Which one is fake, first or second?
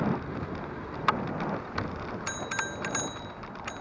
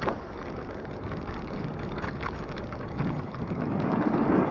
second